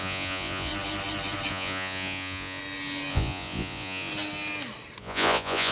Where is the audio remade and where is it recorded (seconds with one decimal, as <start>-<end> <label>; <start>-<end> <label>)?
0.0-0.7 remade; 0.7-1.5 recorded; 1.5-2.6 remade; 2.6-3.1 recorded; 3.1-4.1 remade; 4.1-5.0 recorded; 5.0-5.7 remade